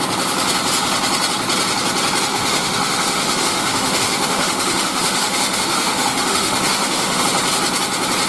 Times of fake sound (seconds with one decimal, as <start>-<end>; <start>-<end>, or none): 2.3-7.2